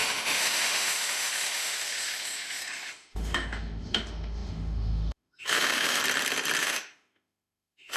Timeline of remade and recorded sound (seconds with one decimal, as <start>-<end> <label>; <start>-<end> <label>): 0.0-6.0 remade; 6.0-6.6 recorded; 6.6-8.0 remade